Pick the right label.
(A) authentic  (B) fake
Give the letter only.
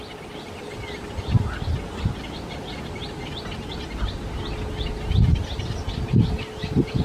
A